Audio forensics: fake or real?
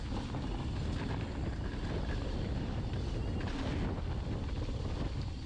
real